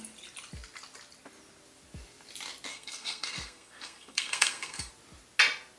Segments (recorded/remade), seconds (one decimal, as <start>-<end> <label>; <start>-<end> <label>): 0.0-2.7 recorded; 2.7-4.9 remade; 4.9-5.8 recorded